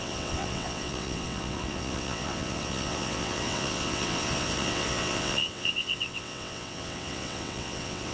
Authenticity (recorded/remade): remade